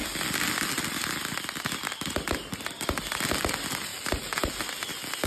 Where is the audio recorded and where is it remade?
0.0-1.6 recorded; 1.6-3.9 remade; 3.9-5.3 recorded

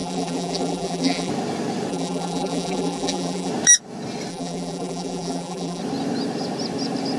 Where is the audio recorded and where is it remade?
0.0-1.3 remade; 1.3-1.9 recorded; 1.9-3.5 remade; 3.5-4.3 recorded; 4.3-5.8 remade; 5.8-7.2 recorded

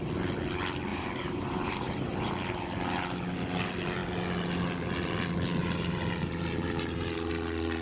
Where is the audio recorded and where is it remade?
0.0-0.9 recorded; 0.9-2.3 remade; 2.3-5.6 recorded; 5.6-7.3 remade; 7.3-7.8 recorded

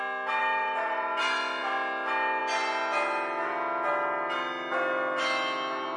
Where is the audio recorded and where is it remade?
0.0-0.4 recorded; 0.4-1.2 remade; 1.2-6.0 recorded

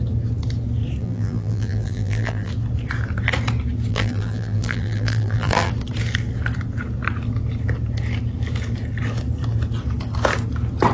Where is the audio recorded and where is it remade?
0.0-1.0 recorded; 1.0-2.5 remade; 2.5-3.9 recorded; 3.9-5.7 remade; 5.7-10.9 recorded

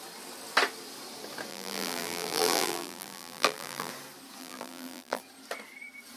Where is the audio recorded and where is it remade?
0.0-1.5 recorded; 1.5-3.9 remade; 3.9-4.4 recorded; 4.4-5.2 remade; 5.2-6.2 recorded